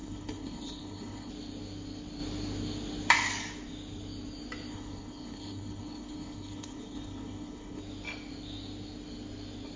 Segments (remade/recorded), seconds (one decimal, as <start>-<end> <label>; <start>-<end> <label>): 0.0-1.3 remade; 1.3-4.7 recorded; 4.7-7.8 remade; 7.8-9.8 recorded